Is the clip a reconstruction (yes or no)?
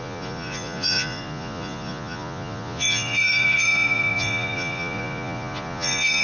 yes